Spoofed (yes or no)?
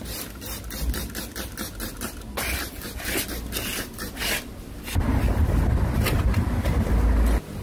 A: no